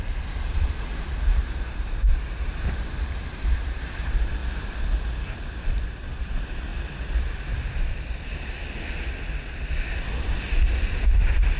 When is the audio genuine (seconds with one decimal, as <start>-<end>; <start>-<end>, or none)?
4.4-5.7; 6.7-9.9